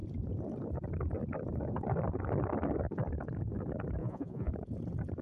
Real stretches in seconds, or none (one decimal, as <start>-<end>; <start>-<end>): 0.0-4.0; 4.5-5.2